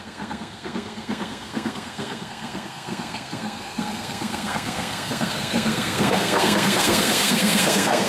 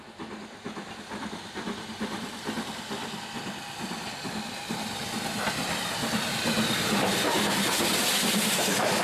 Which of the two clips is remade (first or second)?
first